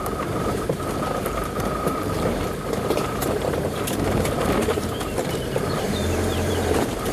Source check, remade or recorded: remade